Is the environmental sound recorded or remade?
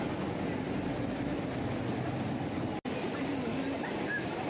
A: recorded